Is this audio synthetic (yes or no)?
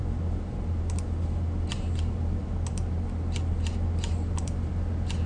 no